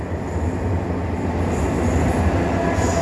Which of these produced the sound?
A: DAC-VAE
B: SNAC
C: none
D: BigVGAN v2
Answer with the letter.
C